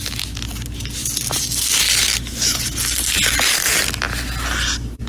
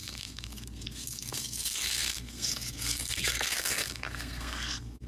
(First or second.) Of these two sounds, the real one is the first